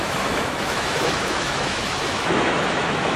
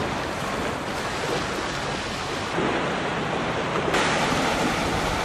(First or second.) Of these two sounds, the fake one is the first